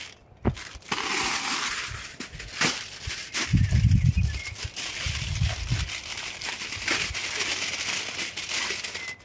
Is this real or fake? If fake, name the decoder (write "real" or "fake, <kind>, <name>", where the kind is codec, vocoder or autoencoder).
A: real